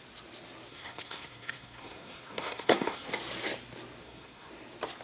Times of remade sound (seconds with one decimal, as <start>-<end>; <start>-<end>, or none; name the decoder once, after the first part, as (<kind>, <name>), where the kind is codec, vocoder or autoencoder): 0.7-3.1 (codec, SNAC); 4.0-4.5